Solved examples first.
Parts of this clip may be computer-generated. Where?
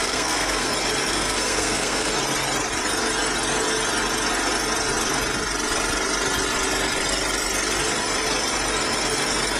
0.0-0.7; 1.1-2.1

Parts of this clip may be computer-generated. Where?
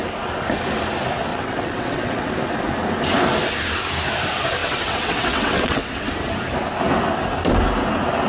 1.3-2.3; 4.6-6.1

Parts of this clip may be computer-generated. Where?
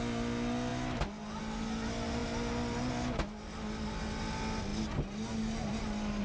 none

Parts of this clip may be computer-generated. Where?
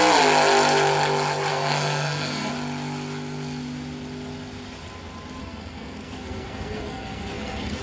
1.5-2.5; 5.4-7.8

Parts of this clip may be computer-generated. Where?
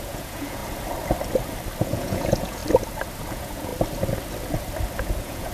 0.0-0.6; 1.8-2.6; 3.3-3.7; 5.0-5.5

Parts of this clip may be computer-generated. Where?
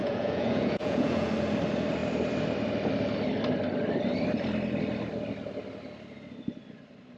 0.0-1.3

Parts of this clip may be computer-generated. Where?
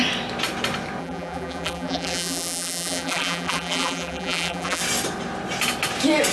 1.0-4.8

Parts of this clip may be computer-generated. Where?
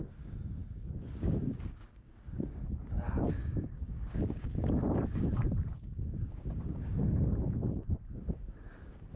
0.0-9.2